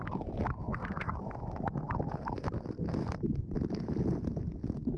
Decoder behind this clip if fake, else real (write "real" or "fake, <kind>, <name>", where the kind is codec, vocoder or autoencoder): fake, autoencoder, DAC-VAE